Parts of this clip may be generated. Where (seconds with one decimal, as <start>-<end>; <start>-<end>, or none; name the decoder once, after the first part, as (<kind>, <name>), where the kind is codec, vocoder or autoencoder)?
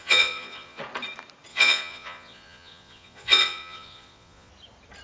0.0-0.8 (vocoder, Vocos); 1.5-4.5